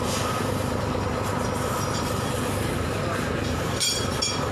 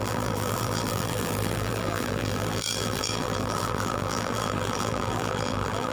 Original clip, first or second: first